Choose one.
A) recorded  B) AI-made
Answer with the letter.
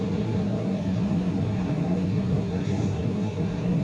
B